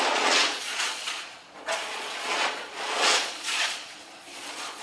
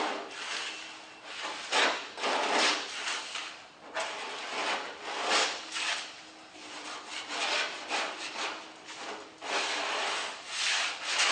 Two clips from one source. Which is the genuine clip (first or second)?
second